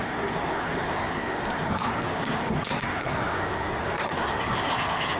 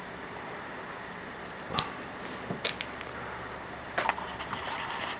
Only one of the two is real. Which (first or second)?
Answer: second